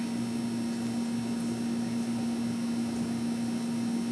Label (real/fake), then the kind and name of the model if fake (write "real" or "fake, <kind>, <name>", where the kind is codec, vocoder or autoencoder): real